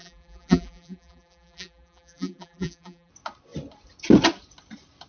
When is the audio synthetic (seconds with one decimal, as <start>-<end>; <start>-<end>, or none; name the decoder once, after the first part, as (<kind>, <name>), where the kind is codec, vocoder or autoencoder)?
0.0-3.1 (vocoder, BigVGAN v2)